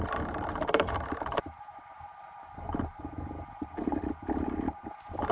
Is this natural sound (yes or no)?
no